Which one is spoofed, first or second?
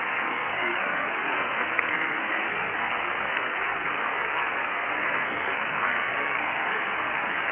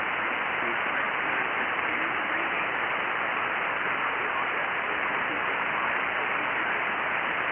first